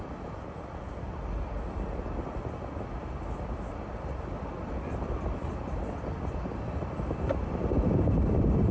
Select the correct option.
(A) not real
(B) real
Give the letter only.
B